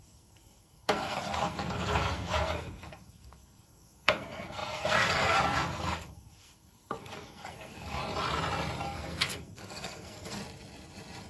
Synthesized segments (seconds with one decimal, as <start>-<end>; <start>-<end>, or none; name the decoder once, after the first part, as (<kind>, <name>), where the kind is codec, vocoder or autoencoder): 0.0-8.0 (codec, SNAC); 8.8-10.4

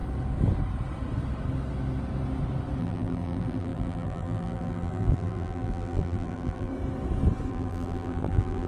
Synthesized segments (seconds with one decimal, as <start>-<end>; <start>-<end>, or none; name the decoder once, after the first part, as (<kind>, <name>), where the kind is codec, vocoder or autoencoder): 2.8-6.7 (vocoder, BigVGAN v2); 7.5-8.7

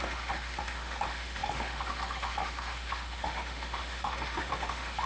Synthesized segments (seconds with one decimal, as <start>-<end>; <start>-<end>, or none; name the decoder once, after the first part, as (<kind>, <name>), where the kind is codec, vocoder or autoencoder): 0.0-5.1 (autoencoder, DAC-VAE)

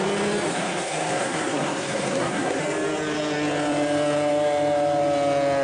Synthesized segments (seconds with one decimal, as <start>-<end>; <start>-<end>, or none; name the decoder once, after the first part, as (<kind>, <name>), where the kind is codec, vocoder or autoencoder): 0.5-2.6 (codec, SNAC)